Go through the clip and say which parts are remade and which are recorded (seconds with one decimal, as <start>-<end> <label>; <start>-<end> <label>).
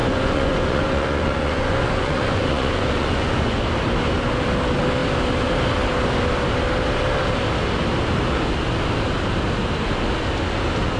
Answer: 0.0-3.6 remade; 3.6-11.0 recorded